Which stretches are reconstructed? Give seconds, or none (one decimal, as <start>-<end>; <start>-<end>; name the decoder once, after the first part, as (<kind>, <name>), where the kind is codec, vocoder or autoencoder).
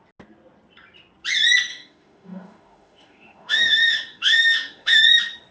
1.7-5.0 (autoencoder, DAC-VAE)